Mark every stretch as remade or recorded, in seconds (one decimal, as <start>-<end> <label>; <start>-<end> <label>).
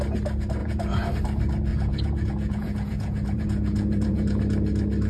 0.0-0.6 recorded; 0.6-1.1 remade; 1.1-1.7 recorded; 1.7-4.4 remade; 4.4-5.1 recorded